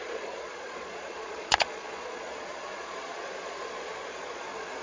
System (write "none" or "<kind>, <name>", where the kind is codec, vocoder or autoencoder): vocoder, Vocos